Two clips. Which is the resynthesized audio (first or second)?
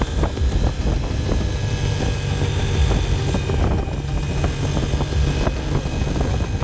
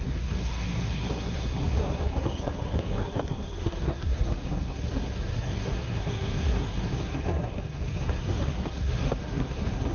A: second